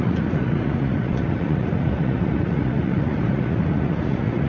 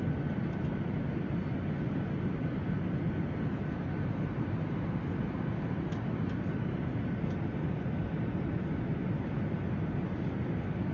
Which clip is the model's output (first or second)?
first